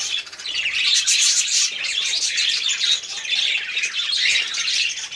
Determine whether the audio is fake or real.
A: real